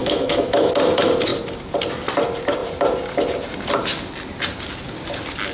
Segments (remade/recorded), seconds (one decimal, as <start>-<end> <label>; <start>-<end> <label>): 0.0-0.7 remade; 0.7-5.5 recorded